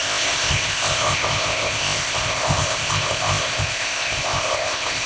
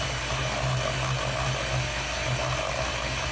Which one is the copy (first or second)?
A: first